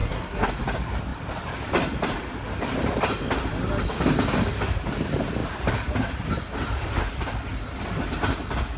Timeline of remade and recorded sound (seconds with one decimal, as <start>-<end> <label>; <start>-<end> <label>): 0.0-0.5 remade; 0.5-8.8 recorded